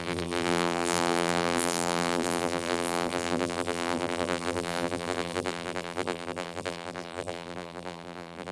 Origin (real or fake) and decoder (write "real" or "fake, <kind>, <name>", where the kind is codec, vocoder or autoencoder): fake, vocoder, BigVGAN v2